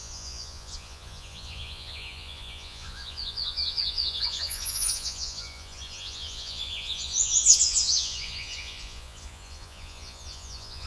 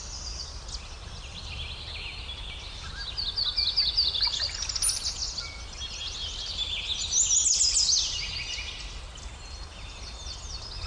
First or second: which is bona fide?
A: second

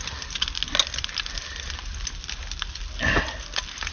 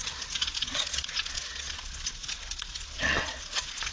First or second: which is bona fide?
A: first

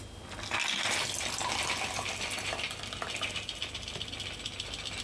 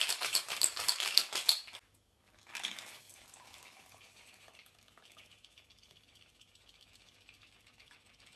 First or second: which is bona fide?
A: first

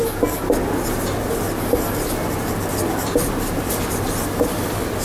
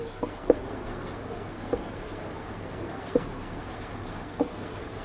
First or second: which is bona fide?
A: first